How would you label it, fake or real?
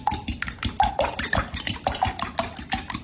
real